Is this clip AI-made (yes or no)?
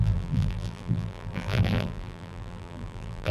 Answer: yes